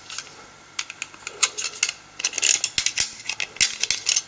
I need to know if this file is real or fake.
real